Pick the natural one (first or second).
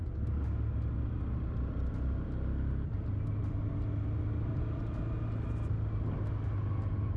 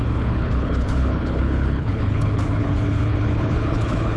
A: first